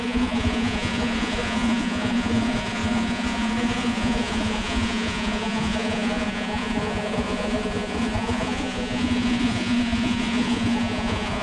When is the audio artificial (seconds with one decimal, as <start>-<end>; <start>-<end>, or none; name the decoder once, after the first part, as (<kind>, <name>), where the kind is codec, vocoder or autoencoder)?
0.0-11.4 (vocoder, Vocos)